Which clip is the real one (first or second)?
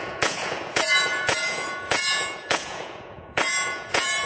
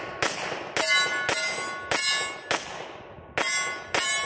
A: second